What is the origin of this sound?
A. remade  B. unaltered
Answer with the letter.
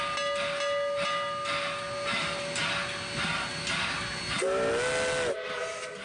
B